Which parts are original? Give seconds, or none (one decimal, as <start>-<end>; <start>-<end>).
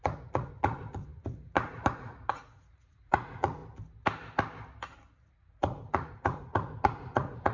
3.6-5.2